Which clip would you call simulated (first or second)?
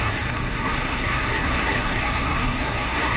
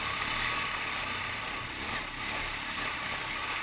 first